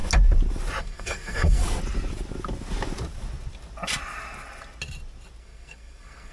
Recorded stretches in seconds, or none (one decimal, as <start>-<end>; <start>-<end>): 0.0-0.8; 1.6-5.4